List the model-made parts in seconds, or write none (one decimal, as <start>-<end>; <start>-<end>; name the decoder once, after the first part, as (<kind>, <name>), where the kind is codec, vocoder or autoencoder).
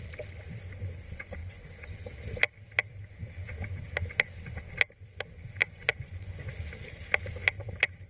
1.4-2.0 (vocoder, Vocos); 5.6-6.5